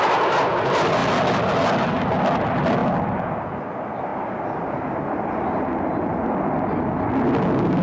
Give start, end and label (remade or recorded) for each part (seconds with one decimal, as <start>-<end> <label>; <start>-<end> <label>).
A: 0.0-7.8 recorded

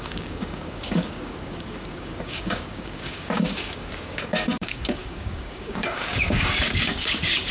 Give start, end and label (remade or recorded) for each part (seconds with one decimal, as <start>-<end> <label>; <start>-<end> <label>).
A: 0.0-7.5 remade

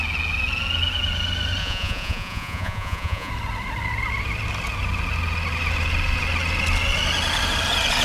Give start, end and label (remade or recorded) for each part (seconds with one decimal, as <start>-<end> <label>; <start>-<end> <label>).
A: 0.0-1.6 recorded; 1.6-3.3 remade; 3.3-8.0 recorded

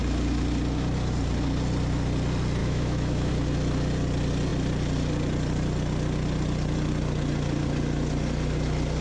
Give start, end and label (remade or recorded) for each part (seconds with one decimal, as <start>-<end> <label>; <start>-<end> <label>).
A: 0.0-2.6 recorded; 2.6-3.3 remade; 3.3-9.0 recorded

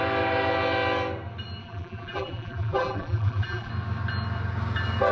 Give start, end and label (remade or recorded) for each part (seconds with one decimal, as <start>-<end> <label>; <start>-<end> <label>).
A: 0.0-1.6 recorded; 1.6-3.7 remade; 3.7-5.1 recorded